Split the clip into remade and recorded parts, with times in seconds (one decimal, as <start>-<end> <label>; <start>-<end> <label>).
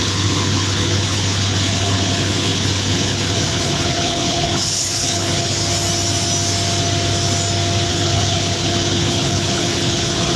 0.0-5.6 remade; 5.6-7.9 recorded; 7.9-10.4 remade